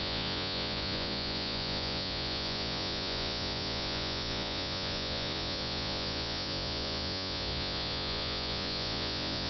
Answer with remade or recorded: remade